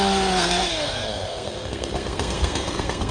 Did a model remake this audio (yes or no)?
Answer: yes